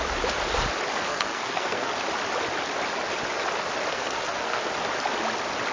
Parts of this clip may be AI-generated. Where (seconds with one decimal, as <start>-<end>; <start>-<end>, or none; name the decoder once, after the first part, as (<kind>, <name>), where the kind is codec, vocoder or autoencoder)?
1.1-1.9 (codec, SNAC); 3.9-4.6